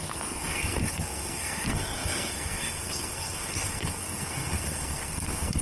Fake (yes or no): yes